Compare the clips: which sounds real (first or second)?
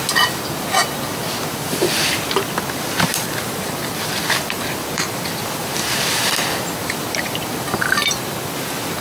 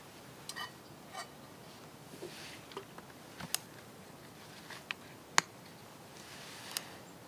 second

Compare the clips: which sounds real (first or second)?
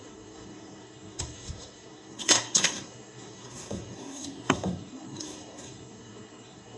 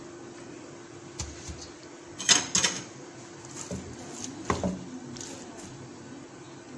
second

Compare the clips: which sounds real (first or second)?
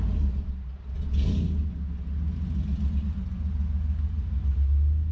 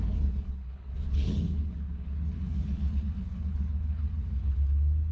first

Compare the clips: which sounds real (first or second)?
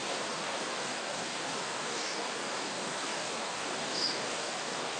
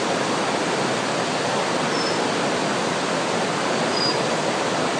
second